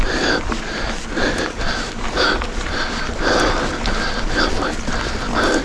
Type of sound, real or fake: real